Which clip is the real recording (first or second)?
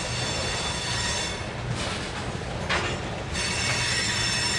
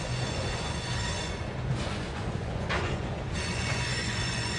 first